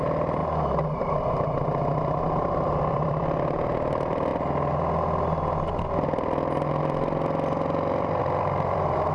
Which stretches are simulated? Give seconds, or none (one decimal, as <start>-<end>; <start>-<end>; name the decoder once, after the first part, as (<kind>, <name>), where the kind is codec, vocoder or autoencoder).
0.0-0.4 (vocoder, BigVGAN v2); 2.2-4.3; 5.7-9.1